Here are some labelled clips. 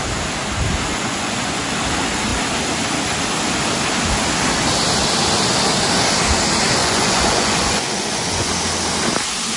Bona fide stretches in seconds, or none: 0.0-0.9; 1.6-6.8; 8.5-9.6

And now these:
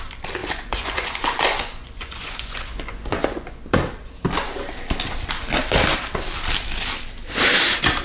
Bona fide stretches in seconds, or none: 0.0-0.4; 3.6-8.0

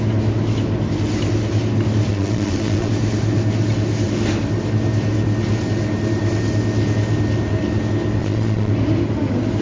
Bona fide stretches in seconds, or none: 0.0-2.1; 2.9-8.2; 8.7-9.6

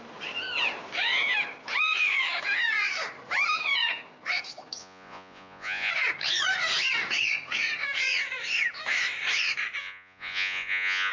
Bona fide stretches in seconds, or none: 0.0-4.8; 5.9-9.8